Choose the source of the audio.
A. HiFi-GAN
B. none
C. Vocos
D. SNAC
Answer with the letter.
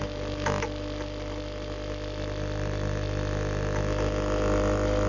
B